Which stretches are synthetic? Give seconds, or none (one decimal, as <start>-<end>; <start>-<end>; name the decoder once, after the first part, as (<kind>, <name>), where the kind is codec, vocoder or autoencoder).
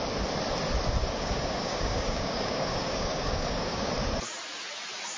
1.0-3.9 (codec, DAC)